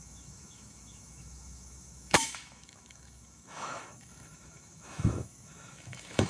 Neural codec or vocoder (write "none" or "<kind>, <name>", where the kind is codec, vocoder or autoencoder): autoencoder, DAC-VAE